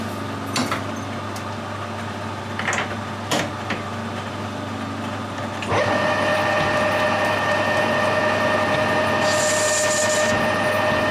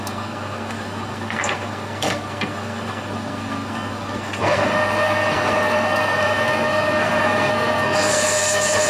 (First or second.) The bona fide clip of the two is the first